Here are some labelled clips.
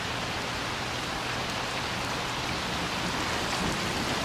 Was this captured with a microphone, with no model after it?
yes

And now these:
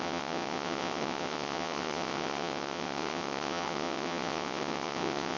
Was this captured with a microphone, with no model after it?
no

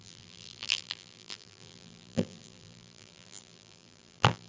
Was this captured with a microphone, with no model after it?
no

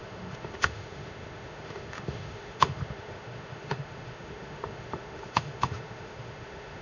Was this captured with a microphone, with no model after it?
no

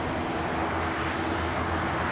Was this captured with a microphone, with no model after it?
yes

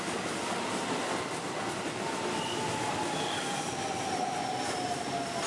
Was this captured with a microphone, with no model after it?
yes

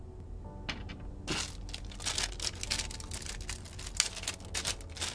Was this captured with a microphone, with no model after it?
yes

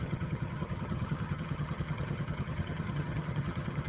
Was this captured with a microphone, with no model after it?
no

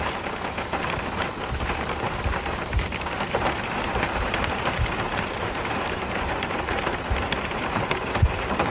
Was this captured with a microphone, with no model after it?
no